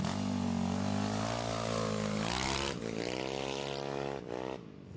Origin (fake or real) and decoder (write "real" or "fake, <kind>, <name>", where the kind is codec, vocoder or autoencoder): real